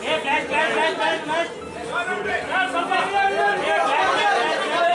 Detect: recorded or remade recorded